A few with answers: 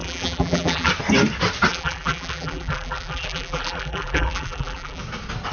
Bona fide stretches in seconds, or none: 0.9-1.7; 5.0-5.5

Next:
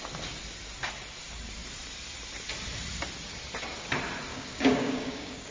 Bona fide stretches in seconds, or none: 0.0-4.3

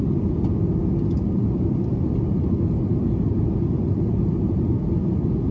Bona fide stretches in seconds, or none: 0.0-5.5

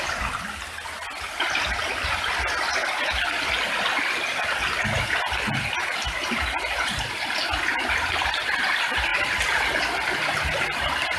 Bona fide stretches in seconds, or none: 0.0-9.1; 10.4-11.2

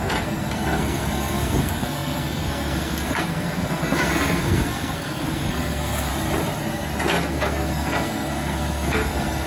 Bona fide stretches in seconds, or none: 6.1-6.7

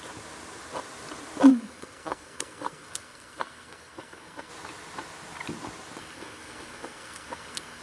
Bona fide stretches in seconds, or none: 0.0-1.5; 4.5-6.0

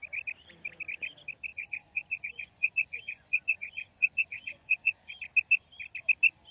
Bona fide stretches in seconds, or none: 0.0-1.5; 5.1-6.5